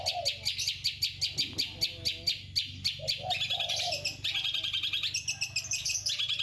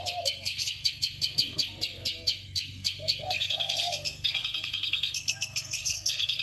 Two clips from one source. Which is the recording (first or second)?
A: first